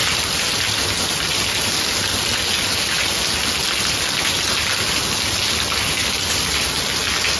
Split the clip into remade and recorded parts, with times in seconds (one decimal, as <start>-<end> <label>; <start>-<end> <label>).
0.0-6.0 recorded; 6.0-6.7 remade; 6.7-7.4 recorded